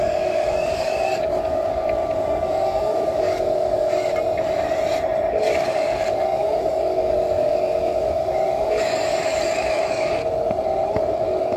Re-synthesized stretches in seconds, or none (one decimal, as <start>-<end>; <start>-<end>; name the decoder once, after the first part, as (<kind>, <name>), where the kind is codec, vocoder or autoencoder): 0.0-4.1 (codec, DAC); 5.3-10.2; 10.9-11.6